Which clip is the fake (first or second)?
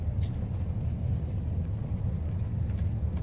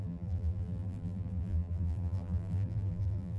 second